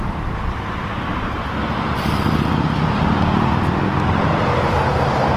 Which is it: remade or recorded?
recorded